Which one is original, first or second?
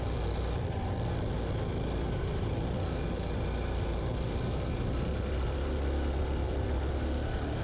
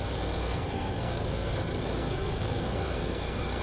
first